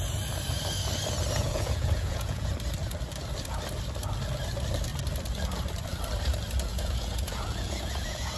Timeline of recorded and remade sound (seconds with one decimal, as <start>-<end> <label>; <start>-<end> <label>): 0.0-1.4 recorded; 1.4-2.5 remade; 2.5-6.7 recorded; 6.7-8.4 remade